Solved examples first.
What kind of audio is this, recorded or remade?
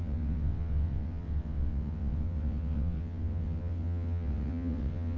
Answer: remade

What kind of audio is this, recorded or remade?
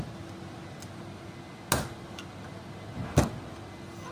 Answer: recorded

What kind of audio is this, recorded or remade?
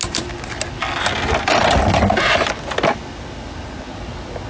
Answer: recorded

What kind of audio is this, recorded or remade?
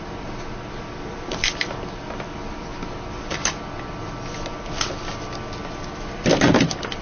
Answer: recorded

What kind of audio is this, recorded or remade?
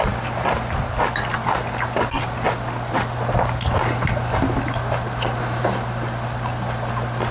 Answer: recorded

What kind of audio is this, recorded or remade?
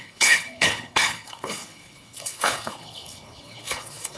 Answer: remade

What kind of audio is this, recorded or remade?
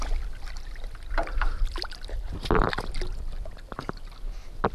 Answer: recorded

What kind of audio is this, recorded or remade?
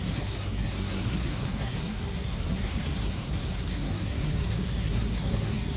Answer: remade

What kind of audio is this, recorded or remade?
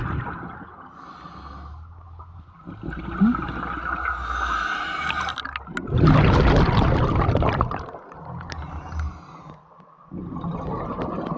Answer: recorded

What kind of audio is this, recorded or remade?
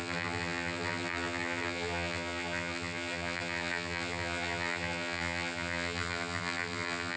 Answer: remade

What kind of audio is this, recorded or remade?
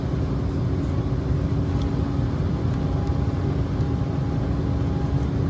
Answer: recorded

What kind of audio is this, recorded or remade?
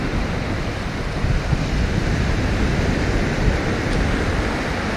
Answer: recorded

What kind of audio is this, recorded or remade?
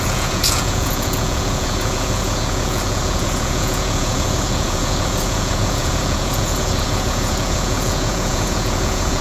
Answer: remade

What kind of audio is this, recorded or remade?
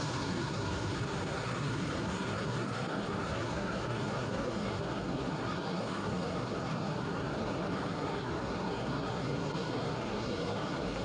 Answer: remade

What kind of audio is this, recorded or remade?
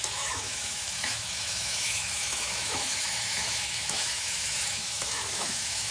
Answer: remade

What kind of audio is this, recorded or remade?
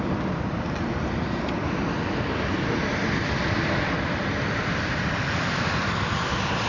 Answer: remade